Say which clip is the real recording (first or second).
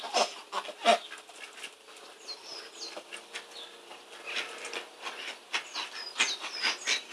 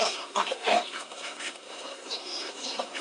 first